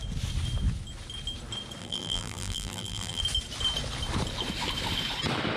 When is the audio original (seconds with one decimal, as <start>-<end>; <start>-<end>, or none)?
0.0-1.8; 3.2-5.6